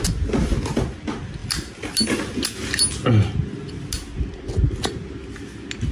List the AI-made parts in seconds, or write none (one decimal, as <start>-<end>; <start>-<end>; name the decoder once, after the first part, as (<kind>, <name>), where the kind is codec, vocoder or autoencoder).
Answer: none